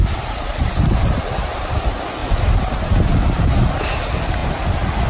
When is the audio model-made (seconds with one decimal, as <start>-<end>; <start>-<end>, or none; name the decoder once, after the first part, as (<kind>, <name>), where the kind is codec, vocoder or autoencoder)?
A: none